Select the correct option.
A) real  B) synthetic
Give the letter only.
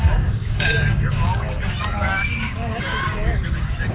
B